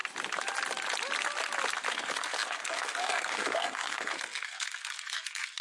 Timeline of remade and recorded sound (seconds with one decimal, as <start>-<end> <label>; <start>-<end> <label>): 0.0-1.9 recorded; 1.9-5.6 remade